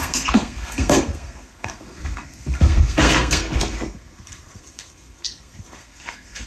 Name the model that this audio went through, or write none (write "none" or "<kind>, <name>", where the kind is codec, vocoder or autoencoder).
codec, SNAC